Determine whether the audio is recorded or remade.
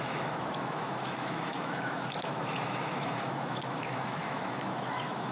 remade